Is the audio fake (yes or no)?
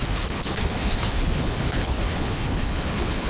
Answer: yes